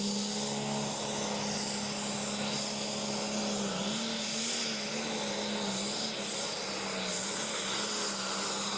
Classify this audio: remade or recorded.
recorded